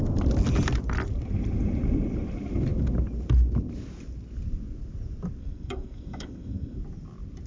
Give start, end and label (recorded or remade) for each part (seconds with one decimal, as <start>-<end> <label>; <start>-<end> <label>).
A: 0.0-5.4 recorded; 5.4-6.8 remade; 6.8-7.5 recorded